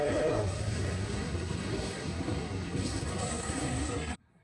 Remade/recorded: remade